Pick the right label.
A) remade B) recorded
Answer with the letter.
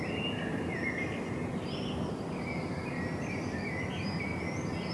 B